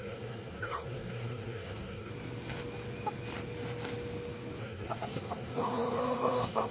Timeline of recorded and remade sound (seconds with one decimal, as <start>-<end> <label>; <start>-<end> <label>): 0.0-2.1 remade; 2.1-4.6 recorded; 4.6-6.7 remade